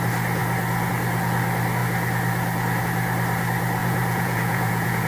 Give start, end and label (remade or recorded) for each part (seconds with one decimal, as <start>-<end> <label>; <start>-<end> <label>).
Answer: 0.0-3.8 recorded; 3.8-5.1 remade